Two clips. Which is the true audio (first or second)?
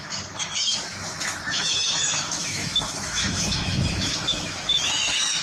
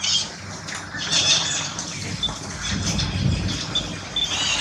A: second